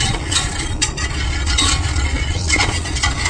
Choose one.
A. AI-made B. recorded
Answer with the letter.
A